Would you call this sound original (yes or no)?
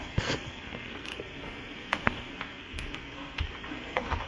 no